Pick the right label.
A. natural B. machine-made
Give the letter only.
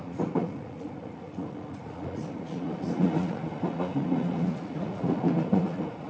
B